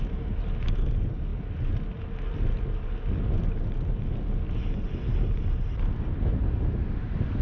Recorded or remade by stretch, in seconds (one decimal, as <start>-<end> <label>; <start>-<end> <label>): 0.0-7.4 recorded